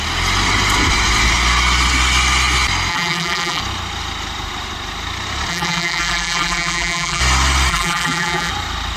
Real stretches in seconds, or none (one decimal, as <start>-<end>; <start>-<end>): 0.0-2.9; 3.6-5.5; 7.2-7.7; 8.5-9.0